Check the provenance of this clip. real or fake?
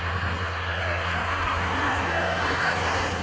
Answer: fake